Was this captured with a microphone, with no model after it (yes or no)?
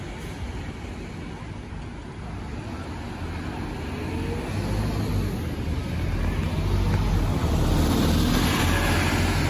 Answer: yes